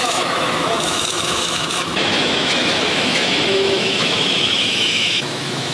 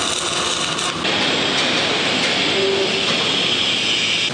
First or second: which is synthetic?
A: first